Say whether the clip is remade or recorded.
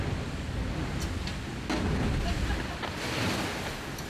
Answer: recorded